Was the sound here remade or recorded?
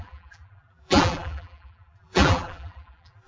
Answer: remade